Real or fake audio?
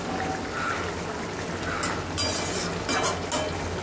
real